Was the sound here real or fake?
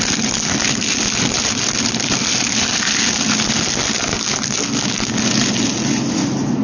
real